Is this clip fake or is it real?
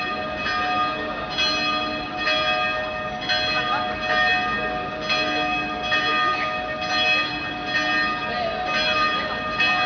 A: real